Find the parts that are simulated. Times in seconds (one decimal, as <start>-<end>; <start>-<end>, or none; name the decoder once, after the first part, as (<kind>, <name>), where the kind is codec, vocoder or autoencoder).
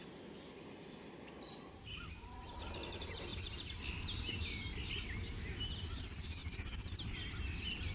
6.4-7.9 (vocoder, BigVGAN v2)